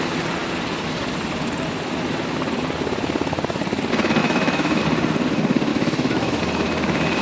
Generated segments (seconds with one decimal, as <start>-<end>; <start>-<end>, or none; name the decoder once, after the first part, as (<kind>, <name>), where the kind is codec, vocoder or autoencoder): 4.2-4.8 (autoencoder, DAC-VAE); 5.7-6.4